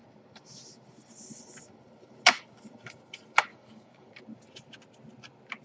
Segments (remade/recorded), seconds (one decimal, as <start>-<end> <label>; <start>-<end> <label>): 0.0-3.5 recorded; 3.5-4.1 remade; 4.1-5.6 recorded